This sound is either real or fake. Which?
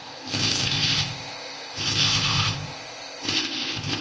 fake